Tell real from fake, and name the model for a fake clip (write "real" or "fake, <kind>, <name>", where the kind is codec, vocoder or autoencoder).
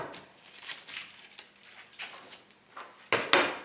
real